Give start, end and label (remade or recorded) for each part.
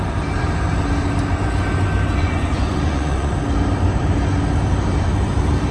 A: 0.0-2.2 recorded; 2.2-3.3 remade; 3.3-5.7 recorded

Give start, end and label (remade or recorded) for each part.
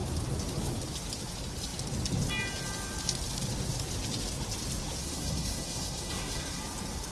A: 0.0-5.0 recorded; 5.0-6.6 remade; 6.6-7.1 recorded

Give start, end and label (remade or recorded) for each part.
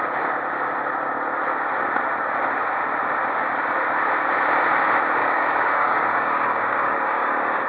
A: 0.0-5.2 recorded; 5.2-7.7 remade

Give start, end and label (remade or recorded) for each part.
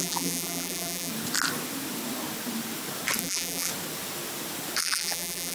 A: 0.0-1.1 remade; 1.1-3.2 recorded; 3.2-3.7 remade; 3.7-4.8 recorded; 4.8-5.5 remade